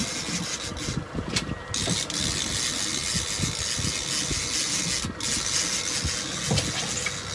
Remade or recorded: recorded